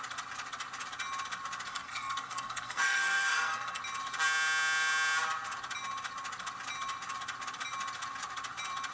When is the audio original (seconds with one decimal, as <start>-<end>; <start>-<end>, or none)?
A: 0.0-1.7; 3.8-8.9